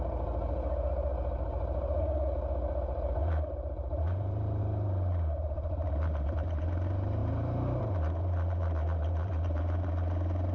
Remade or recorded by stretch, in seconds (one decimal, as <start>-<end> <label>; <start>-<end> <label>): 0.0-10.5 remade